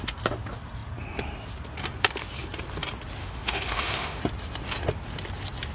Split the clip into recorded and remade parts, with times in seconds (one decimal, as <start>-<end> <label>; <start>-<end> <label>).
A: 0.0-3.2 recorded; 3.2-4.2 remade; 4.2-5.7 recorded